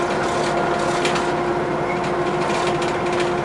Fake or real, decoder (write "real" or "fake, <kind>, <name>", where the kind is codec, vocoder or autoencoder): real